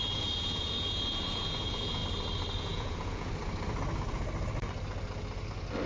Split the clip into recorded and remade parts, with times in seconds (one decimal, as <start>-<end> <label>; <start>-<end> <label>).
0.0-2.0 remade; 2.0-2.6 recorded; 2.6-3.3 remade; 3.3-5.9 recorded